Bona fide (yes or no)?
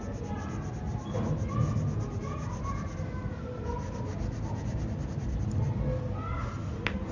yes